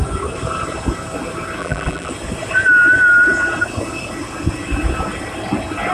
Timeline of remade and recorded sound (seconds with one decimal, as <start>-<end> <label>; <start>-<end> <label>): 0.0-1.6 recorded; 1.6-2.1 remade; 2.1-5.9 recorded